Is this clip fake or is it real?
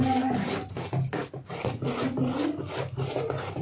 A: real